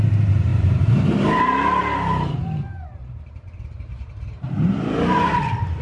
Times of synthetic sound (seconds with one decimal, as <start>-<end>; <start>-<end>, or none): 0.0-5.8